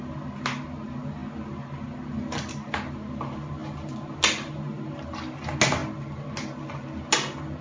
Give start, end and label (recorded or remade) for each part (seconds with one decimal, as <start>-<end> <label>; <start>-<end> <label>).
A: 0.0-7.6 recorded